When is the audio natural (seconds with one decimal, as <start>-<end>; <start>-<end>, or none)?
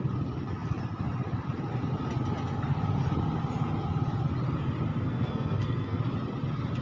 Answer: 0.0-4.9; 6.0-6.8